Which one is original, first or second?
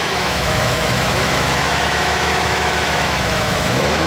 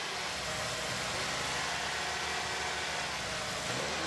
second